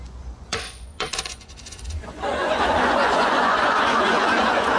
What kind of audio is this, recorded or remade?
remade